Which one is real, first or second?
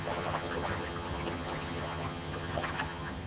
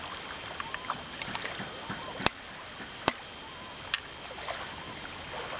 second